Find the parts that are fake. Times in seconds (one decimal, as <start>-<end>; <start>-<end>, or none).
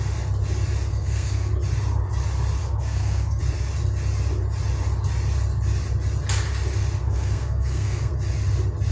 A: 0.9-1.5; 2.6-3.4; 7.0-8.1